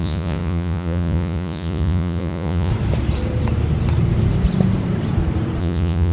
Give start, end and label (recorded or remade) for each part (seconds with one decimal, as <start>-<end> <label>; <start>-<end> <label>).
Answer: 0.0-2.7 remade; 2.7-5.6 recorded; 5.6-6.1 remade